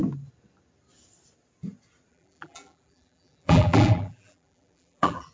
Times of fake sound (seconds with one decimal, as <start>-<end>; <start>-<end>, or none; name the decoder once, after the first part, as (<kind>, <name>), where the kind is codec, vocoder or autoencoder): 2.1-5.3 (vocoder, BigVGAN v2)